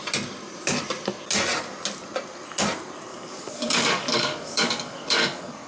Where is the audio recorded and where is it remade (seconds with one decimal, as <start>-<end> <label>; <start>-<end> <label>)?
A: 0.0-3.1 recorded; 3.1-5.7 remade